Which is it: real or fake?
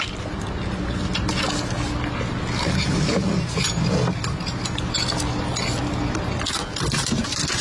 real